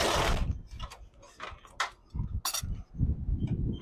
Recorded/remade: recorded